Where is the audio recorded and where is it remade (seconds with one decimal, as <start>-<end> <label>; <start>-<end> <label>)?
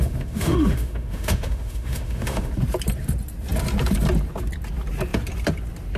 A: 0.0-2.5 remade; 2.5-6.0 recorded